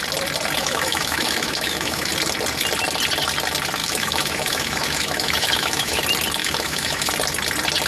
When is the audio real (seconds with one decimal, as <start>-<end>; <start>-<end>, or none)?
0.0-0.6; 2.1-3.8; 6.0-6.4; 7.1-7.9